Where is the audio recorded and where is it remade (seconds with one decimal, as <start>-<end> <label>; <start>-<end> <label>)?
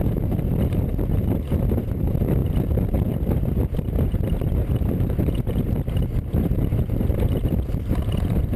0.0-8.6 remade